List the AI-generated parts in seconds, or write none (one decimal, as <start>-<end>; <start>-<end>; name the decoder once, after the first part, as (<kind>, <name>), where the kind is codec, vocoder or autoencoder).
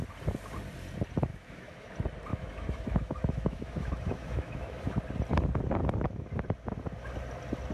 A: 1.3-1.9 (autoencoder, DAC-VAE); 2.3-5.0; 5.8-6.3